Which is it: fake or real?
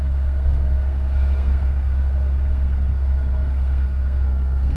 fake